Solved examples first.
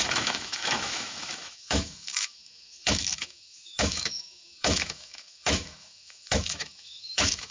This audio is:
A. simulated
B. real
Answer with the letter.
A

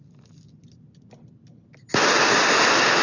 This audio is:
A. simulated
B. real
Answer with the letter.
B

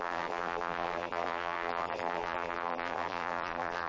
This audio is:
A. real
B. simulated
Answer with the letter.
B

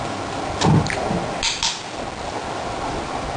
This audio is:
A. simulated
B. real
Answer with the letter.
B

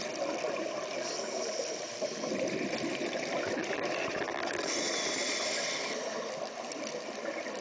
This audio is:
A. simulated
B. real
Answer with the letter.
B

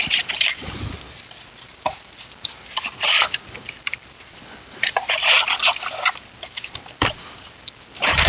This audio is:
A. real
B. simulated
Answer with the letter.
B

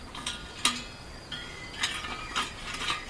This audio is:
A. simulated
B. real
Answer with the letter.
B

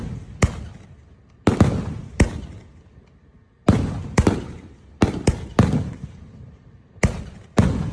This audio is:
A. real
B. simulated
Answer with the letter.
A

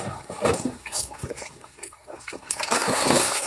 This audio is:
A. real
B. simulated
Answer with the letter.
B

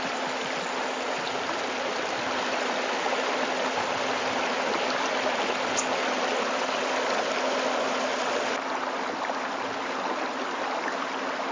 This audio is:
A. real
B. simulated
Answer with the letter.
A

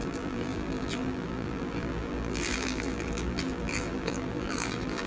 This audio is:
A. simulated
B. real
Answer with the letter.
A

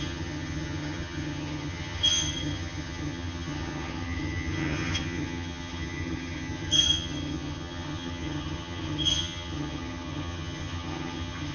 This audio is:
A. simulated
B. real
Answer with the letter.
A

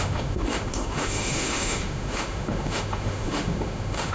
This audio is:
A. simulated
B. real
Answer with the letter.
A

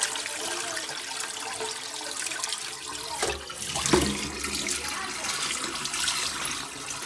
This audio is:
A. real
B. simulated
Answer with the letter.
A